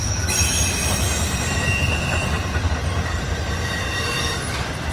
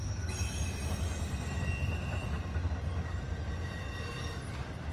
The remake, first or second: first